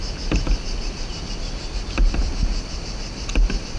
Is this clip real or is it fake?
real